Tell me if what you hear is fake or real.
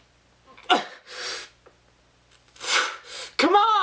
real